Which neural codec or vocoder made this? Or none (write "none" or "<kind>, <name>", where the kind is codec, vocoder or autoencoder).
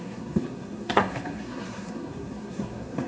codec, SNAC